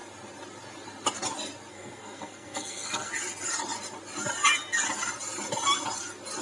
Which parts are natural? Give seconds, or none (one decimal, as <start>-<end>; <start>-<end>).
0.0-1.7; 3.1-6.4